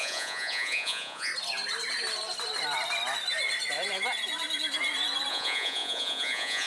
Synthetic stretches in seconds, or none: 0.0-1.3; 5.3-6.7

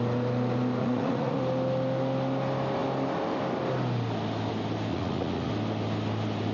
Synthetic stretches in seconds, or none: 0.8-1.4; 4.9-5.5